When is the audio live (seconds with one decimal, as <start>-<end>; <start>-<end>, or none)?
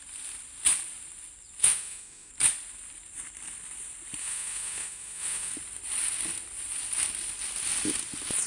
0.0-1.6; 2.3-4.2; 5.5-8.5